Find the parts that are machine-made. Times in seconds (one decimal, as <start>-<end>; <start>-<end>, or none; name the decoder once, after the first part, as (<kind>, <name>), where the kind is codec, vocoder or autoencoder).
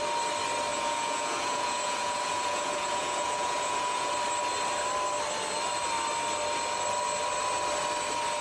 0.7-4.1 (vocoder, Vocos)